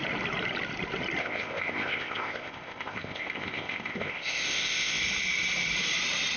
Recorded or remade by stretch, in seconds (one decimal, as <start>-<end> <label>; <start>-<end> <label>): 0.0-1.2 recorded; 1.2-5.0 remade; 5.0-6.4 recorded